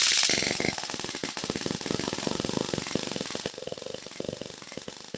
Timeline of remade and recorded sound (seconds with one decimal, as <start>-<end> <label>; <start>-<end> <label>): 0.0-5.2 recorded